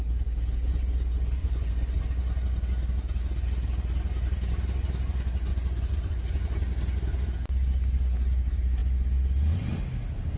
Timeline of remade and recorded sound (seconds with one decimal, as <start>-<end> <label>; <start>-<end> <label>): 0.0-1.4 recorded; 1.4-2.0 remade; 2.0-5.5 recorded; 5.5-6.2 remade; 6.2-10.4 recorded